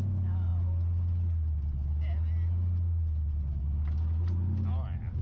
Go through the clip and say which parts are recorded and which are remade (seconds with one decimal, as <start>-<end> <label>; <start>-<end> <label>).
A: 0.0-5.2 recorded